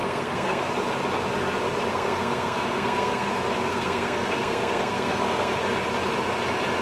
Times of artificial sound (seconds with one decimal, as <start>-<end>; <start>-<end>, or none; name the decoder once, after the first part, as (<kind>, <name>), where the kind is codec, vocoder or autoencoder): 0.0-0.7 (codec, SNAC); 1.9-3.3; 3.7-5.5